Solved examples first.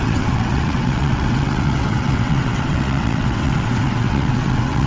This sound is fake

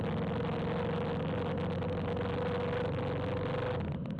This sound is real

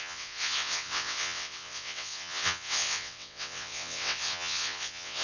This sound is fake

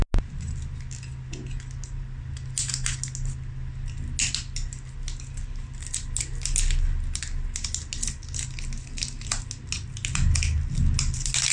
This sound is real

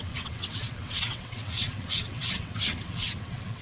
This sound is fake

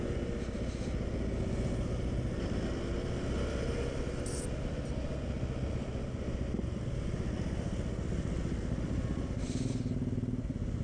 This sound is real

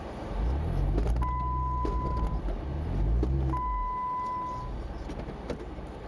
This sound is real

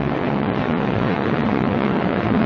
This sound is fake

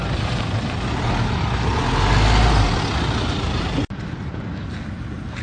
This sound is real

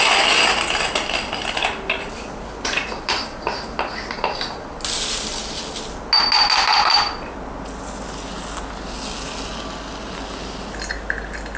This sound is real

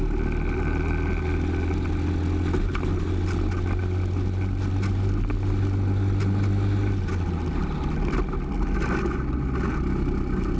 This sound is real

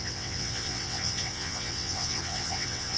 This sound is fake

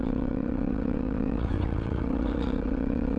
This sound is fake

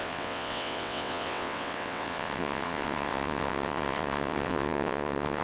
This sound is fake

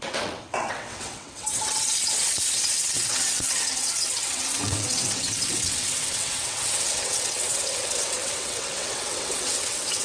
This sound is fake